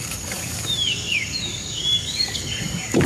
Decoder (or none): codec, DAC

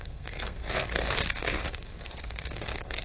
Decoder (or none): codec, SNAC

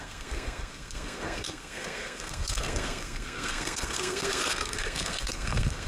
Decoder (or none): codec, SNAC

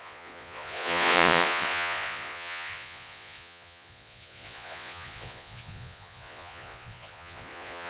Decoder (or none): vocoder, Vocos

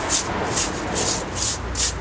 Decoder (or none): none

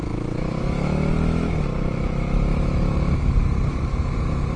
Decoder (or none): autoencoder, DAC-VAE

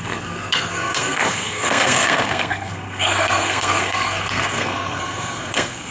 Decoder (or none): codec, SNAC